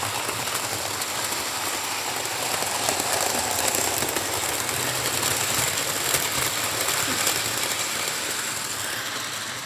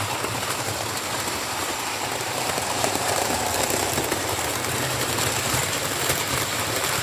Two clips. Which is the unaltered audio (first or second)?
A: first